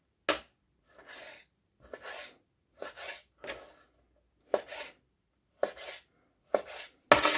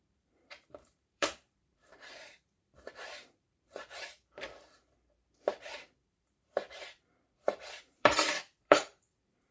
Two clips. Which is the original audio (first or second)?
first